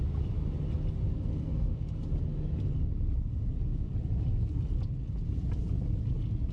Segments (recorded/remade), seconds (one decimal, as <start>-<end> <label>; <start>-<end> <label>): 0.0-1.1 recorded; 1.1-1.9 remade; 1.9-6.5 recorded